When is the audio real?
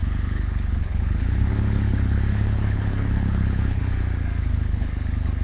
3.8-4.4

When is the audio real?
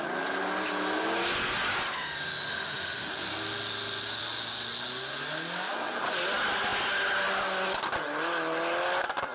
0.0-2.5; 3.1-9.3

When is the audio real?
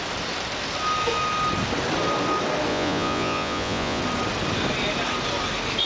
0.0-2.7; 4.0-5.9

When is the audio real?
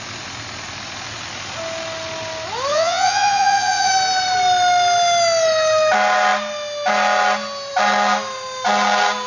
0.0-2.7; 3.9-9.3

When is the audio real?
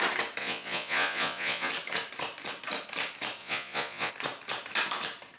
0.0-0.4; 1.7-3.4; 4.1-5.4